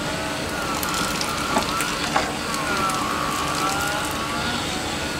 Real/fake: real